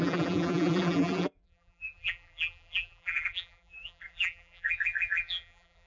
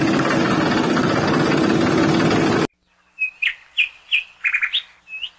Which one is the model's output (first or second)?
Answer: first